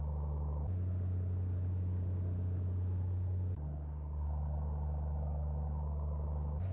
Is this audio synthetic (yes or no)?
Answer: no